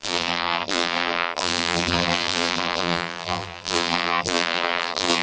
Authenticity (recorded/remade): remade